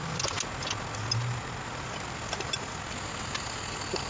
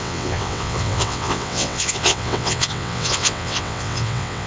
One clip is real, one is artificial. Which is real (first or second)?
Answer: first